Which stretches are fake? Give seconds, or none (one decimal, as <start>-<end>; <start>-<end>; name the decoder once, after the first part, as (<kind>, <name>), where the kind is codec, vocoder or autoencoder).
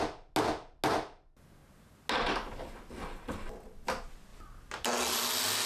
none